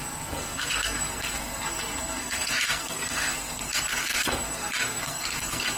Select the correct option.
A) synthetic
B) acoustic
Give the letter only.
A